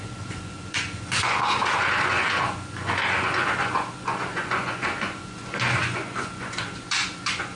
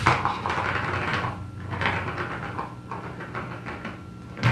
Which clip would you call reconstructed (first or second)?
first